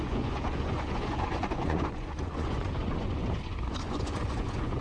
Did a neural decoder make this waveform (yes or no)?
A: yes